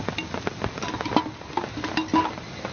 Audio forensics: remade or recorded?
recorded